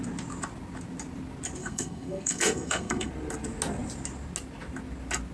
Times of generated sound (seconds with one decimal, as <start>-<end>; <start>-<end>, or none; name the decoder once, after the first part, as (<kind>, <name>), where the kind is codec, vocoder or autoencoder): 1.6-3.1 (codec, SNAC)